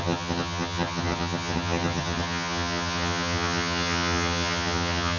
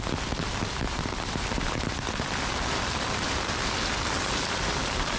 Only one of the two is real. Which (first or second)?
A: second